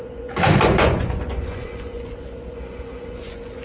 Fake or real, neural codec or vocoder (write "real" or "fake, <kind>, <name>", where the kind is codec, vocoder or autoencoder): fake, vocoder, Vocos